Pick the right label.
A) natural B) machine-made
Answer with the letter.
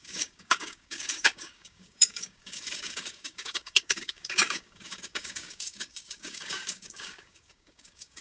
B